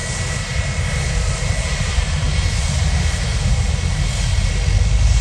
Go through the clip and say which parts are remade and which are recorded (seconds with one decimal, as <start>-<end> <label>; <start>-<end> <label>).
0.0-1.3 recorded; 1.3-3.3 remade; 3.3-5.2 recorded